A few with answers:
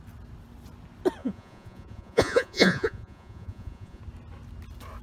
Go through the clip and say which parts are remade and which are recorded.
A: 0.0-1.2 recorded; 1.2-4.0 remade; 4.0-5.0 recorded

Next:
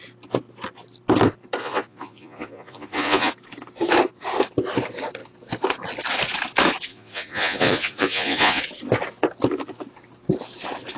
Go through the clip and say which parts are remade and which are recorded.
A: 0.0-1.6 recorded; 1.6-3.3 remade; 3.3-6.9 recorded; 6.9-8.6 remade; 8.6-11.0 recorded

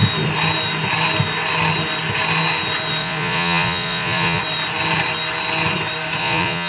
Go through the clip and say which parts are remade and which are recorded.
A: 0.0-3.0 recorded; 3.0-4.4 remade; 4.4-6.2 recorded; 6.2-6.7 remade

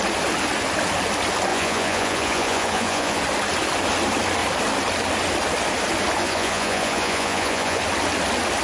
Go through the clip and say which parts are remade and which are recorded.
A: 0.0-1.5 recorded; 1.5-3.2 remade; 3.2-6.2 recorded; 6.2-7.8 remade; 7.8-8.6 recorded

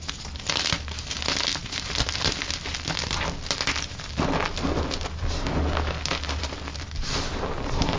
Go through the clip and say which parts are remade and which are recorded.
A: 0.0-8.0 recorded

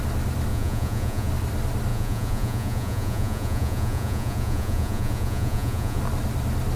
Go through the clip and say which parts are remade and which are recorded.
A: 0.0-0.5 recorded; 0.5-1.3 remade; 1.3-1.9 recorded; 1.9-6.0 remade; 6.0-6.8 recorded